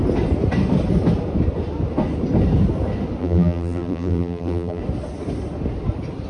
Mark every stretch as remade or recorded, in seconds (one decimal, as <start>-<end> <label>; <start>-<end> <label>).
0.0-3.2 recorded; 3.2-4.8 remade; 4.8-6.3 recorded